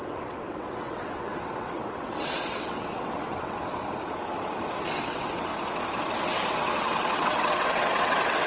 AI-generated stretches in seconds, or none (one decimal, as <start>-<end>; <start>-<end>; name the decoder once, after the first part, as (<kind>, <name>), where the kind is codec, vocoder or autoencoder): 0.0-3.7 (vocoder, WaveNeXt); 4.9-5.5; 6.5-8.5